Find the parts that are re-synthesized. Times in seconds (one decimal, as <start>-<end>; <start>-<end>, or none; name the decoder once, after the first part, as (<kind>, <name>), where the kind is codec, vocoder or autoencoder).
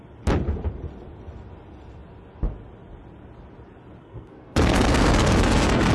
4.0-5.9 (codec, SNAC)